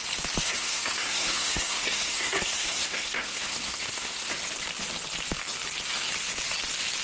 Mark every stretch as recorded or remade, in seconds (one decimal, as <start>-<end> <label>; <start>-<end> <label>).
0.0-0.4 recorded; 0.4-4.3 remade; 4.3-7.0 recorded

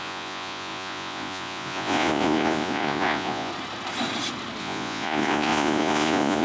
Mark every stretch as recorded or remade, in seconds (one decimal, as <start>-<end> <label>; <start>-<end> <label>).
0.0-3.5 remade; 3.5-4.6 recorded; 4.6-6.4 remade